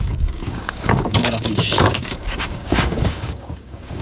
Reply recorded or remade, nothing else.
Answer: remade